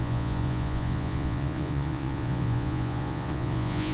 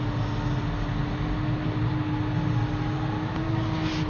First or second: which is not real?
first